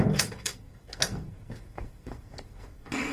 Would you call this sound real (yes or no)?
no